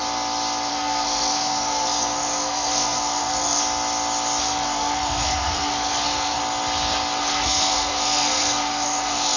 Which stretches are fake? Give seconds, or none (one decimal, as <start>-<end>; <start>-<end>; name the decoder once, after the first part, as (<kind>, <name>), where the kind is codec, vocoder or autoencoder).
0.7-3.6 (codec, SNAC); 4.4-6.4; 7.2-9.4